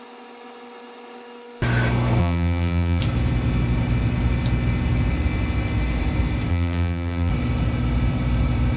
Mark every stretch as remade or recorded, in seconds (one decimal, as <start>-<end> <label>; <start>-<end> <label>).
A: 0.0-2.2 recorded; 2.2-3.0 remade; 3.0-6.5 recorded; 6.5-7.3 remade; 7.3-8.8 recorded